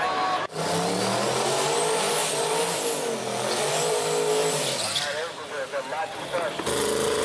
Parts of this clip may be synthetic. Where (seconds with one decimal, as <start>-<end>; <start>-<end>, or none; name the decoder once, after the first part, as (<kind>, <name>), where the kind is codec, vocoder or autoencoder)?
none